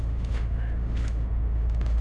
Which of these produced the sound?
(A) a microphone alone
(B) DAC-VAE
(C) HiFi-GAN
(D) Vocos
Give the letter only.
B